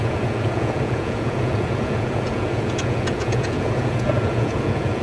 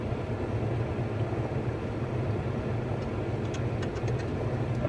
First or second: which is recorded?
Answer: second